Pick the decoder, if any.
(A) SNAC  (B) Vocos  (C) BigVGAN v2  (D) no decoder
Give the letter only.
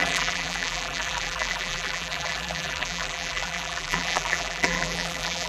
C